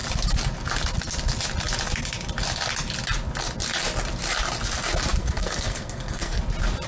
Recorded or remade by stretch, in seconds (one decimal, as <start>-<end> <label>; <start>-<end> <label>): 0.0-5.2 recorded; 5.2-6.4 remade; 6.4-6.9 recorded